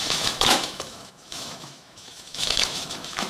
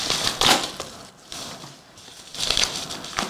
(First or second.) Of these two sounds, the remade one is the first